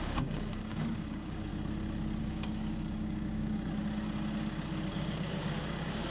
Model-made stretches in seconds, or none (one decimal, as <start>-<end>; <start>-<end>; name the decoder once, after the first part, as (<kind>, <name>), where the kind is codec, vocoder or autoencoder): 0.0-1.5 (codec, DAC); 2.2-3.8; 4.9-6.1